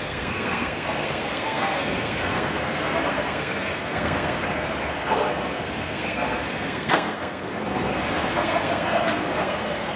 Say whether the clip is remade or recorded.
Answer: remade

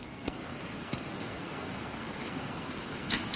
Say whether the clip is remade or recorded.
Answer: remade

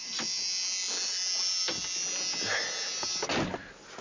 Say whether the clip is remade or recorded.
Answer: recorded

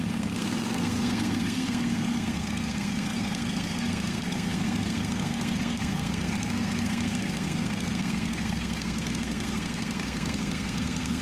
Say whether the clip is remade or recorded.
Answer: remade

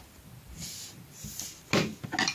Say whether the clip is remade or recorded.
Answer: recorded